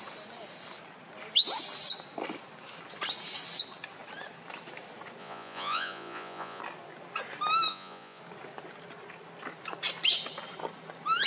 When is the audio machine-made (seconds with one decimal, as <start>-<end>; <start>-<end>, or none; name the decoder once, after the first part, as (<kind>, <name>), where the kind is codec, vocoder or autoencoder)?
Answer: 5.2-6.6 (vocoder, Vocos); 7.7-8.2